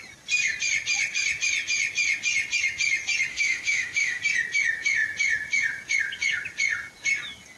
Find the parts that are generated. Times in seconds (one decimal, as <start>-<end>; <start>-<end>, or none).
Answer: 3.3-4.2